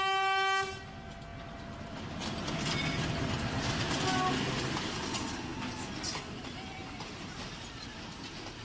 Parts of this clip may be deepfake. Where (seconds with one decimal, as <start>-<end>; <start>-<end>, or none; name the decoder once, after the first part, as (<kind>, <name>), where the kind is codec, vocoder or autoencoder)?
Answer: none